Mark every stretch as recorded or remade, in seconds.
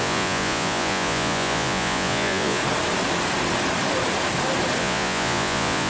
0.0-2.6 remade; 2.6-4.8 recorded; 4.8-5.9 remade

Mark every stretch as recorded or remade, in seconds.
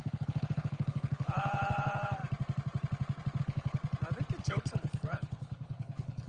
0.0-2.2 remade; 2.2-3.4 recorded; 3.4-3.8 remade; 3.8-4.4 recorded; 4.4-6.3 remade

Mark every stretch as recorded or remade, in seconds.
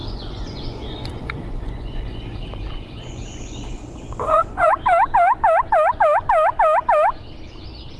0.0-4.7 remade; 4.7-8.0 recorded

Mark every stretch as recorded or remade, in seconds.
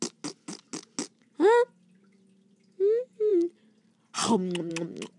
0.0-5.2 recorded